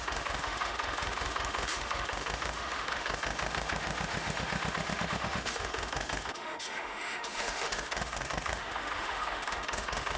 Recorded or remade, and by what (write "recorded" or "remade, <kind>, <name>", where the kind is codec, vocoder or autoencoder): remade, autoencoder, DAC-VAE